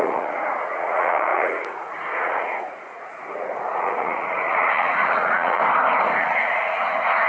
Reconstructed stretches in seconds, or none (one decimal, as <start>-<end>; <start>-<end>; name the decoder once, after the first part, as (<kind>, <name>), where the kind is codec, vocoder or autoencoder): 0.0-5.6 (vocoder, Vocos); 6.2-7.3